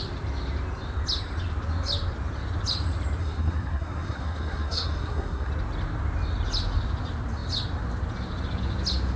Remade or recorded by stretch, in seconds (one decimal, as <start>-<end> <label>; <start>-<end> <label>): 0.0-3.2 recorded; 3.2-5.5 remade; 5.5-9.2 recorded